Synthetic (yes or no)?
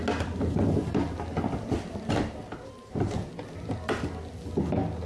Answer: no